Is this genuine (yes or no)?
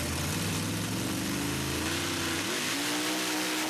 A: yes